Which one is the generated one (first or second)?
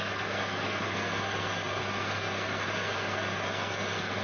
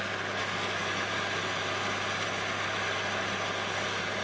first